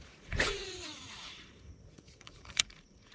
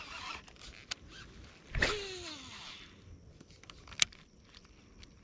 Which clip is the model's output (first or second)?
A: first